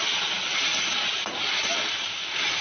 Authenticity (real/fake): real